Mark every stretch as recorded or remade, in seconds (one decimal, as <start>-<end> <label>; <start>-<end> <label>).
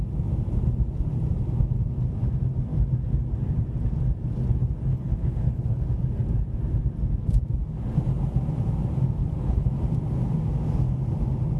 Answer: 0.0-4.9 recorded; 4.9-5.8 remade; 5.8-9.2 recorded; 9.2-9.7 remade; 9.7-11.6 recorded